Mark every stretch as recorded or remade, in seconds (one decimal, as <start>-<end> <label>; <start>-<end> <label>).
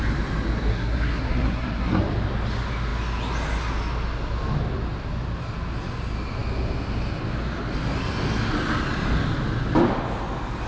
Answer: 0.0-0.7 recorded; 0.7-2.0 remade; 2.0-10.7 recorded